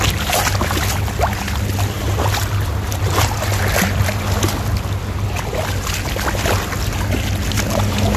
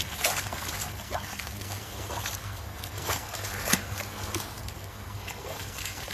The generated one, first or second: second